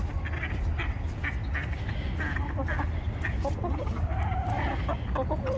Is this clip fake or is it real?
real